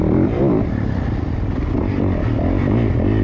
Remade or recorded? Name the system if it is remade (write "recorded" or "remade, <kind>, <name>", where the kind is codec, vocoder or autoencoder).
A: recorded